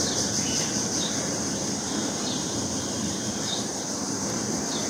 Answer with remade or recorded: remade